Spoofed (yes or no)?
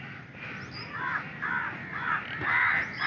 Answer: no